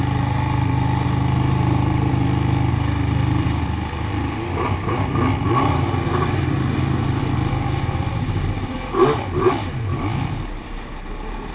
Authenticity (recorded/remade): recorded